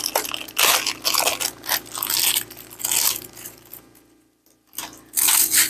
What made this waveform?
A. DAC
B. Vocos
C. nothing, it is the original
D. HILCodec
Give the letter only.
C